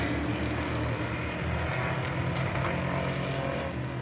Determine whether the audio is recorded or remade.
recorded